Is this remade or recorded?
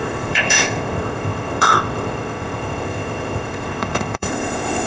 remade